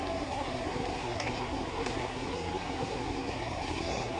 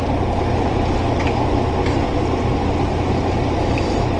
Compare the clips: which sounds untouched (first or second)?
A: second